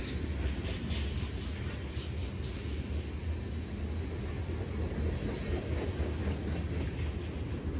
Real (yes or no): yes